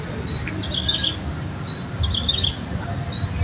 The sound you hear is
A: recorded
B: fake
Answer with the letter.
A